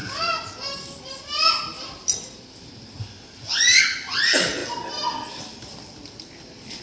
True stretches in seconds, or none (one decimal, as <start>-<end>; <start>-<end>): 0.0-3.8; 4.6-5.4